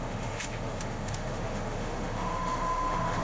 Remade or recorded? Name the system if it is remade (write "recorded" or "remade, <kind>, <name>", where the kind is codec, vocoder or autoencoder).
remade, autoencoder, DAC-VAE